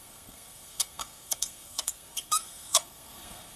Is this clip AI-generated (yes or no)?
yes